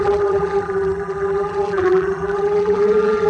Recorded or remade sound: remade